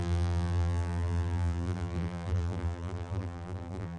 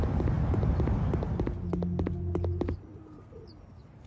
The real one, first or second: second